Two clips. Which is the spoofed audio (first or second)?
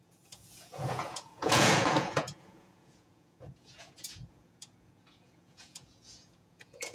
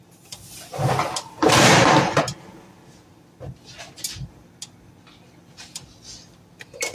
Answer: first